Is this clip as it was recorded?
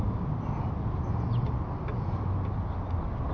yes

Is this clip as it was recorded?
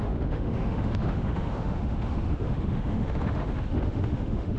no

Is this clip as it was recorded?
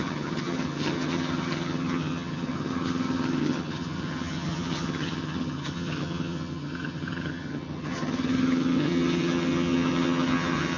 no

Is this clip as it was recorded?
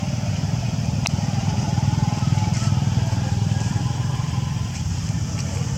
no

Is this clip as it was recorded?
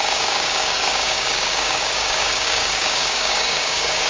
no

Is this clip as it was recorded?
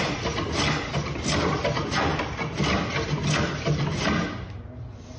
yes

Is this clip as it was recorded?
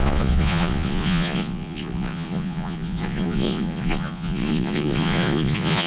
no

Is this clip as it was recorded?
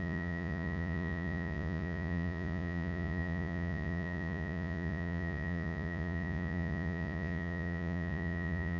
no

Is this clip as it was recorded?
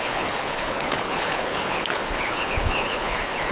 no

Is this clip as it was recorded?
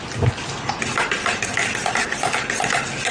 yes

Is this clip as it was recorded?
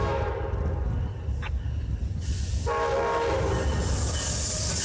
yes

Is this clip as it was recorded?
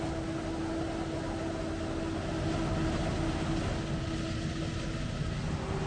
yes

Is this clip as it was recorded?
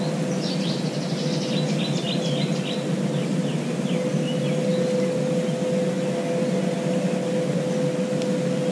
yes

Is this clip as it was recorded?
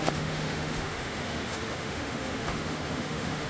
no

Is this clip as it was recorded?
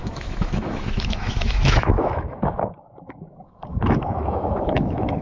no